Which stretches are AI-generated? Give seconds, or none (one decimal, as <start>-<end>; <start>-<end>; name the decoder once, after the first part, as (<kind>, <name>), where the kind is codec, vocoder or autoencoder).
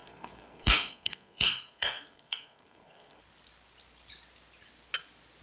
0.0-3.2 (codec, SNAC)